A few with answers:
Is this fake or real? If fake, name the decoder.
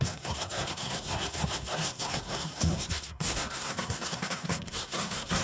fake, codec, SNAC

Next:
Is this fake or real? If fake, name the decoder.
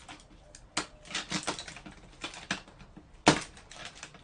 real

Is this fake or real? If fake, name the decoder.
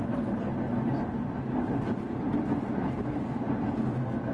real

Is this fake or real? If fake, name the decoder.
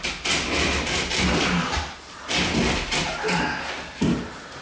real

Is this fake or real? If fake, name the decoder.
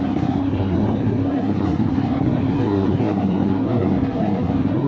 fake, codec, SNAC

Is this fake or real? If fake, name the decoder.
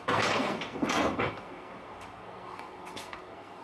fake, codec, SNAC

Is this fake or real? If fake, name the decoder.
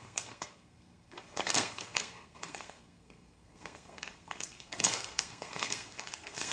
fake, codec, SNAC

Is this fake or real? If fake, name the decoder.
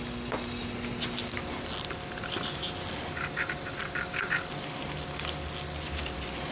real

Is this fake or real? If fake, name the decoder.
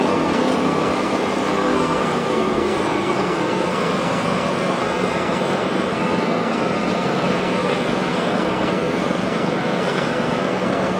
fake, codec, SNAC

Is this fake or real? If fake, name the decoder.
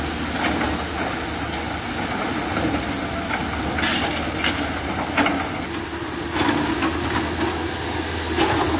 real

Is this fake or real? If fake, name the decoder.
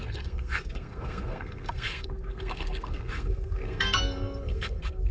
fake, codec, SNAC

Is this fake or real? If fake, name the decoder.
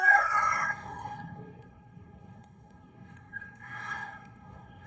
fake, codec, SNAC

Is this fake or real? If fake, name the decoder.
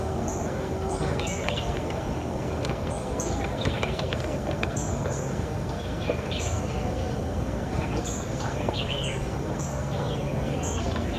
fake, codec, SNAC